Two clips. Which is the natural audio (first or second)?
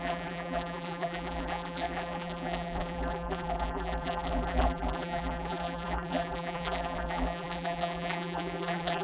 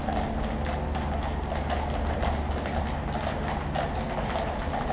second